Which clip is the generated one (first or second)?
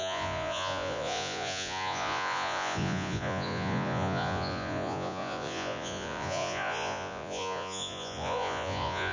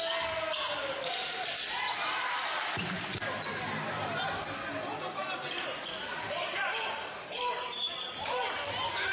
first